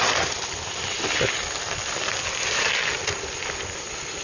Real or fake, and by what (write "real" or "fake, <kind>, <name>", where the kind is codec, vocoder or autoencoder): real